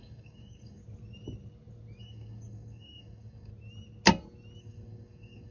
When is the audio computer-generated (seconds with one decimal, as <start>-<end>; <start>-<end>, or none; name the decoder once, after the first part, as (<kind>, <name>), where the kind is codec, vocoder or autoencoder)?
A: 0.0-0.8 (codec, DAC); 2.0-3.5; 4.6-5.5